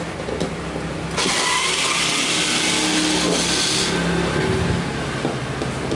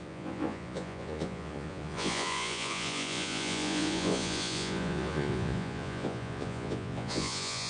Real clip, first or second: first